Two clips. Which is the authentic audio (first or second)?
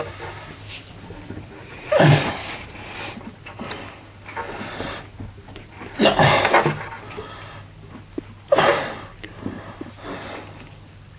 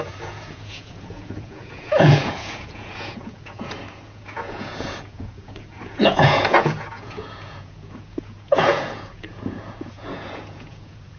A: first